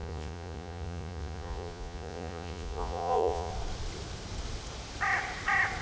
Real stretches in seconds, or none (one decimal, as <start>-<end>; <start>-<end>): 3.5-5.8